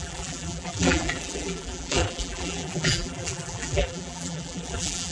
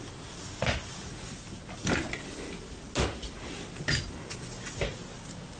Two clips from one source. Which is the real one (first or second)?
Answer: second